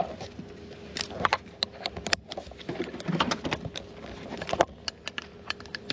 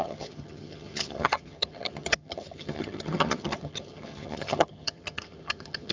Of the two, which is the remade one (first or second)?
second